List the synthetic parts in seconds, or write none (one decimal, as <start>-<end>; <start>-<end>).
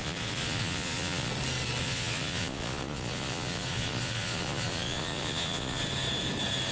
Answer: 0.0-1.3; 1.8-5.8